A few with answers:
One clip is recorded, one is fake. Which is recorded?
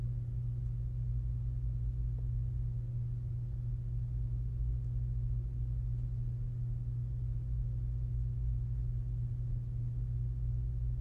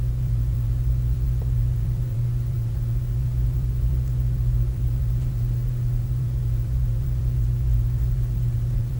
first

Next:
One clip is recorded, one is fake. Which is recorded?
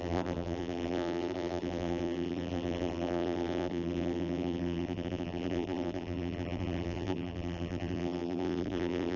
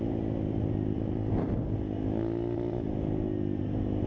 second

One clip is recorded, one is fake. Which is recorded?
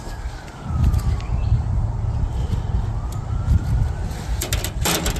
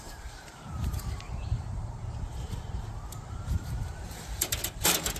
first